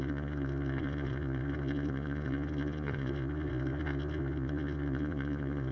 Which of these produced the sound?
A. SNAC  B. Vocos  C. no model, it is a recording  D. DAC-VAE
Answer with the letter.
B